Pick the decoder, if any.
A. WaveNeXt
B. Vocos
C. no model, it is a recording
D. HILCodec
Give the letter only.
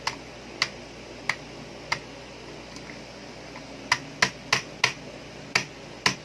C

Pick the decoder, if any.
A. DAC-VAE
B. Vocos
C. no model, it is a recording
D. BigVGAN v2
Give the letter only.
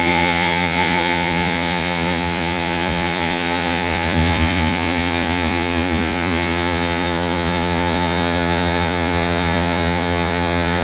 B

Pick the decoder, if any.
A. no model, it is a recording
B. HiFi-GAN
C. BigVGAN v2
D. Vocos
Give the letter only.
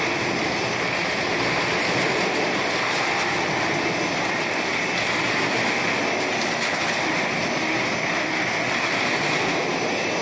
A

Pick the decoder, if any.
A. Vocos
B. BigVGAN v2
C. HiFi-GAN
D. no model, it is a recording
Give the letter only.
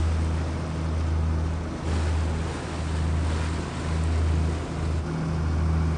D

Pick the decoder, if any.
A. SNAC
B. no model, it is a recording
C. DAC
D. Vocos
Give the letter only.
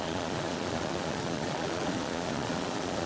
D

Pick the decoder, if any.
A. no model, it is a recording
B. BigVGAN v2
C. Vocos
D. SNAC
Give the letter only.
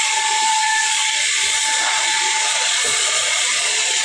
C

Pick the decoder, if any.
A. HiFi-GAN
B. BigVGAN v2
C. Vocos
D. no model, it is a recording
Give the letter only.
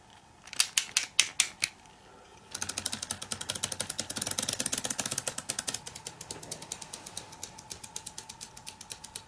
D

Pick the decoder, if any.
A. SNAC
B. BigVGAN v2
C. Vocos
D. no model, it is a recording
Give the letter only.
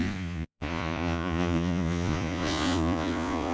C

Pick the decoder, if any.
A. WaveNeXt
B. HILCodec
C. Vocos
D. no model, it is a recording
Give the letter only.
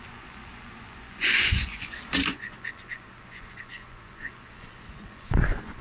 C